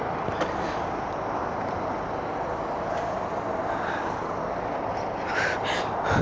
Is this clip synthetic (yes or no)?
no